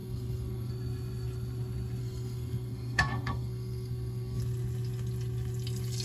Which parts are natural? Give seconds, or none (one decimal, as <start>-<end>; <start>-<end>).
0.7-2.0; 4.4-6.0